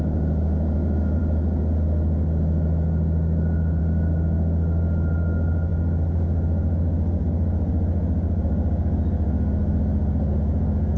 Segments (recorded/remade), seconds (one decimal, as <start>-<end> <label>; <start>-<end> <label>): 0.0-11.0 recorded

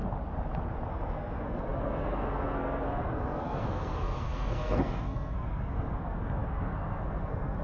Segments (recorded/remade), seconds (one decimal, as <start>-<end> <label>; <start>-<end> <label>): 0.0-0.9 recorded; 0.9-7.6 remade

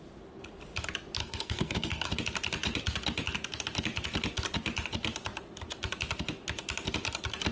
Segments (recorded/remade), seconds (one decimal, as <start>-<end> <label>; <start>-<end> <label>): 0.0-1.2 recorded; 1.2-2.1 remade; 2.1-7.5 recorded

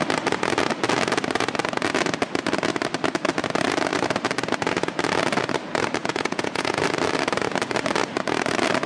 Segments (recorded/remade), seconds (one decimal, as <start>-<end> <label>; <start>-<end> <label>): 0.0-6.0 recorded; 6.0-6.8 remade; 6.8-8.9 recorded

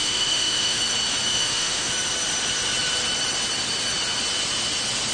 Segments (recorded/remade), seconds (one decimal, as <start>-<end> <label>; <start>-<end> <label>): 0.0-0.8 remade; 0.8-1.3 recorded; 1.3-1.9 remade; 1.9-5.1 recorded

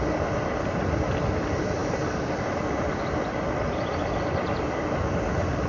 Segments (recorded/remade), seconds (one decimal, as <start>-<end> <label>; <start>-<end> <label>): 0.0-5.7 recorded

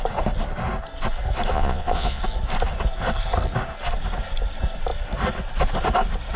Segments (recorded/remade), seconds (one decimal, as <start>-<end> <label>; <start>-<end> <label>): 0.0-1.5 recorded; 1.5-2.2 remade; 2.2-6.4 recorded